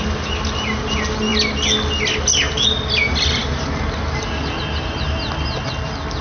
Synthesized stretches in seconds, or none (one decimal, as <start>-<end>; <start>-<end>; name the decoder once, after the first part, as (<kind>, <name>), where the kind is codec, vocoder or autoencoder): none